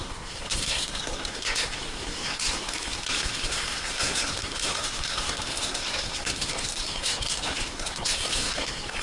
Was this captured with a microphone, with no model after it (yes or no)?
no